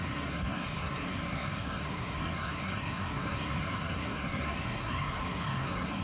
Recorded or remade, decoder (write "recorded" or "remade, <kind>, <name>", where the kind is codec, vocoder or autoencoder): remade, codec, SNAC